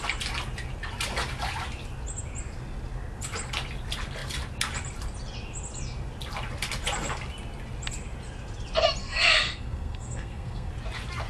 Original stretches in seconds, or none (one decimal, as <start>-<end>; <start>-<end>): 0.0-9.0; 10.7-11.3